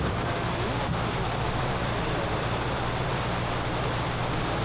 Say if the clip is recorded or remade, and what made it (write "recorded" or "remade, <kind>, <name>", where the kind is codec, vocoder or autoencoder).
recorded